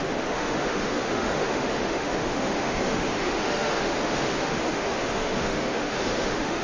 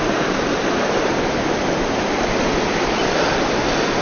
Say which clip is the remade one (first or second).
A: first